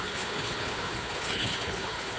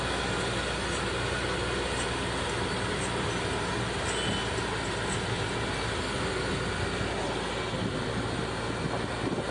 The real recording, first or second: second